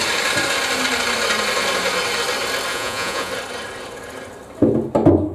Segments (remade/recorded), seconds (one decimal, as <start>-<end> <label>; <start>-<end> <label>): 0.0-2.7 recorded; 2.7-3.3 remade; 3.3-5.3 recorded